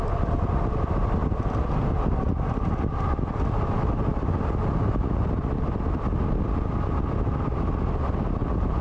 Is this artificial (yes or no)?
no